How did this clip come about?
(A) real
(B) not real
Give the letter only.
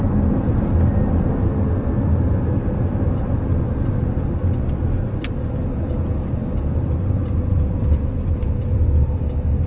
A